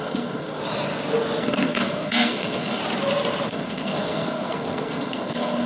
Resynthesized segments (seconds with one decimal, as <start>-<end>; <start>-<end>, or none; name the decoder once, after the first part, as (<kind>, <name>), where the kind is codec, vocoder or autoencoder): 0.0-0.6 (codec, SNAC); 1.4-2.8; 3.5-5.7